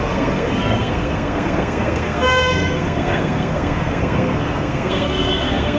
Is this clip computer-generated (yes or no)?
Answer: yes